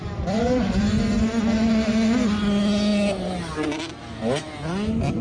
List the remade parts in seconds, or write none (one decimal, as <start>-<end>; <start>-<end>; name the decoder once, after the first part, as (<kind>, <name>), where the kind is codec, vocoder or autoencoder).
none